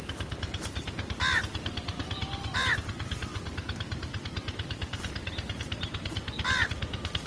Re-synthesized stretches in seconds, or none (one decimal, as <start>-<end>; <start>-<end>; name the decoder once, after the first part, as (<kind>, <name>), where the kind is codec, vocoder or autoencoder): none